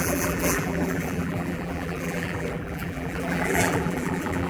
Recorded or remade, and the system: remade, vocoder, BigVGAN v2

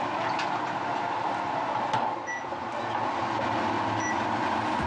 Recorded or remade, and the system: recorded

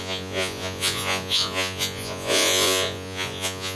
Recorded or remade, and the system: remade, vocoder, Vocos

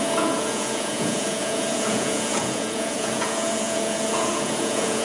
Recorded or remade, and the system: remade, vocoder, Vocos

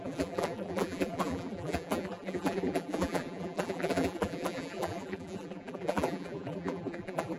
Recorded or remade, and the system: remade, vocoder, BigVGAN v2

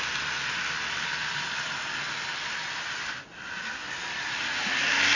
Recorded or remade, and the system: recorded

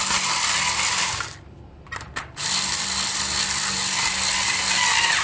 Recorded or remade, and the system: recorded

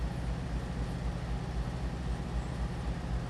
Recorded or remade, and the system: recorded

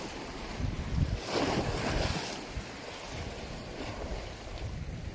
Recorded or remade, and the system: recorded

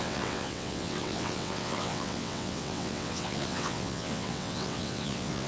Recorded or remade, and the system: remade, vocoder, WaveNeXt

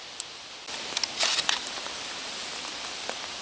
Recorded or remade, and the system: remade, vocoder, BigVGAN v2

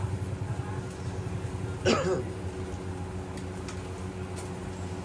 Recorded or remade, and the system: recorded